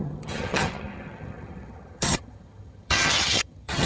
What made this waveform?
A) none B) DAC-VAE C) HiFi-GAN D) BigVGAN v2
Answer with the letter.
C